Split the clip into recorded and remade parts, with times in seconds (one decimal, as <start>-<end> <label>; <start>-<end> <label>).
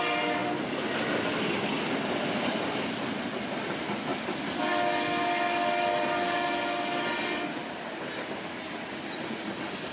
0.0-9.9 recorded